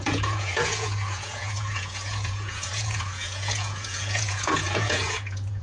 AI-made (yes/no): yes